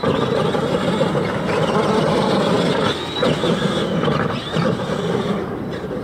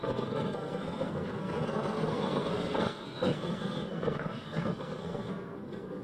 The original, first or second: first